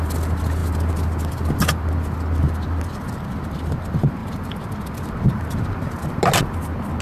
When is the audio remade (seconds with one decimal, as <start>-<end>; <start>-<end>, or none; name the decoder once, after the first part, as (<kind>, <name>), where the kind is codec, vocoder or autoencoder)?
none